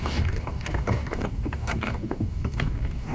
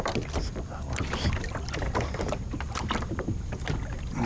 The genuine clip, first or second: second